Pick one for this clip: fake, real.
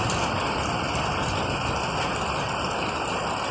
real